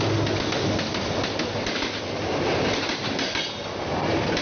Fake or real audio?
real